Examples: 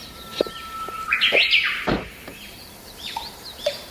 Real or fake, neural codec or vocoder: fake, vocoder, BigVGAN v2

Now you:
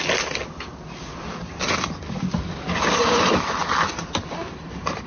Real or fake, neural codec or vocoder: fake, vocoder, BigVGAN v2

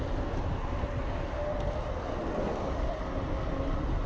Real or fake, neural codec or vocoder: real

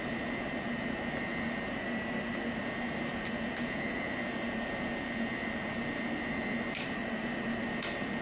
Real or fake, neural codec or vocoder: fake, vocoder, BigVGAN v2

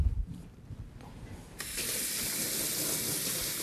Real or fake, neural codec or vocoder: real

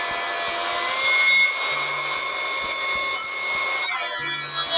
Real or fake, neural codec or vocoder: real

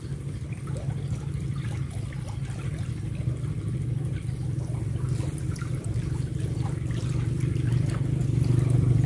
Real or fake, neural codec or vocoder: real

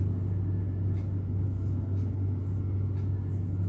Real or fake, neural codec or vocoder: real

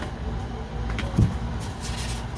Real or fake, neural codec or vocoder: real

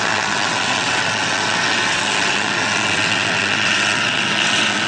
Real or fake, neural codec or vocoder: fake, vocoder, WaveNeXt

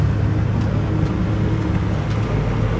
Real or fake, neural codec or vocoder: real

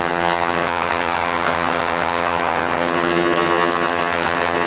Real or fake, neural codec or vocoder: fake, vocoder, HiFi-GAN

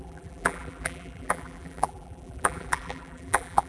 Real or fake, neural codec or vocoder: fake, vocoder, BigVGAN v2